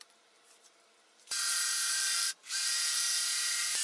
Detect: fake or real fake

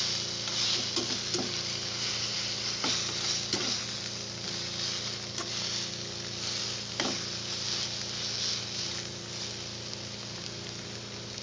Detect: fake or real real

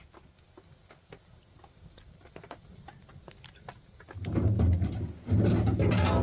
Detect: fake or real real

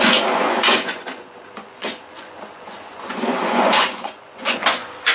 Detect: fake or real fake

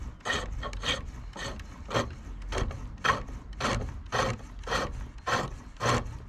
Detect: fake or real real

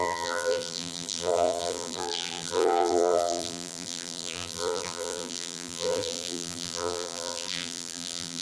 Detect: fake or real fake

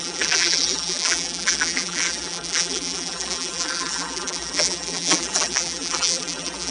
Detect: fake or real fake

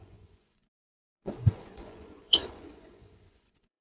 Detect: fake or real fake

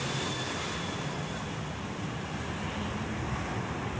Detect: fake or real real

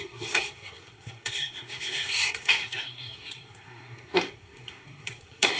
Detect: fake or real fake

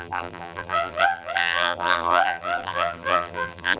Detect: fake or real fake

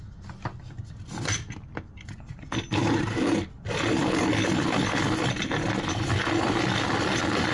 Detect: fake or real real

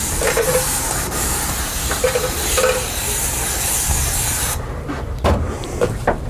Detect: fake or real fake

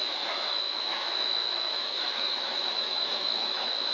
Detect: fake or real fake